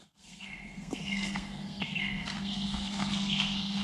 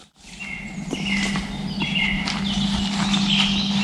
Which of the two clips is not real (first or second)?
first